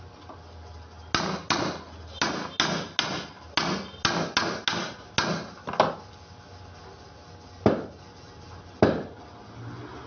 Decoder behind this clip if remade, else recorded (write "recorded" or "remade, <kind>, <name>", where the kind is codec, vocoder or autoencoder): recorded